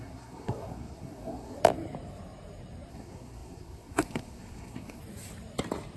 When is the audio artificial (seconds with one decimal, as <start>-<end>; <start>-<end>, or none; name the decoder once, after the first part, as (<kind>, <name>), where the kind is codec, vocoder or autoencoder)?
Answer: 0.0-1.6 (codec, SNAC); 2.9-5.0